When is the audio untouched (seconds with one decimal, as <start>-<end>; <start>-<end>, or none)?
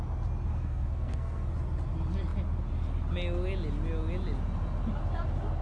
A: 0.0-0.5; 1.5-5.6